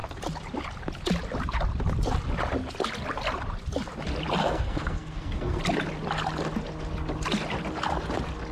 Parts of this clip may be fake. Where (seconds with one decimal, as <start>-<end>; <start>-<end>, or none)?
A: 4.4-5.6